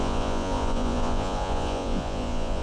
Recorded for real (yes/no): no